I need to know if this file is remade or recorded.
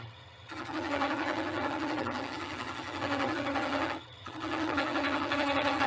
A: remade